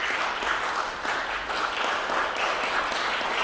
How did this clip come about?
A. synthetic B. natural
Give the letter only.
B